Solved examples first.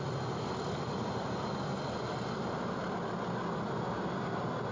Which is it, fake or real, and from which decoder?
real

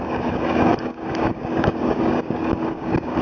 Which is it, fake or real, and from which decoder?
fake, codec, DAC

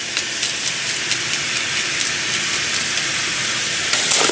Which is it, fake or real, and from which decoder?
real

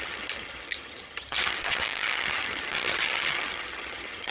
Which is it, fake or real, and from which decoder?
fake, vocoder, HiFi-GAN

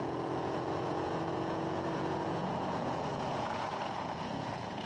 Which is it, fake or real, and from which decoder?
fake, vocoder, Vocos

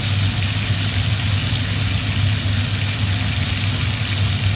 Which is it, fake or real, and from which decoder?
real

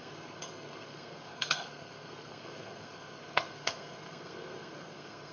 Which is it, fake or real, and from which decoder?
fake, codec, SNAC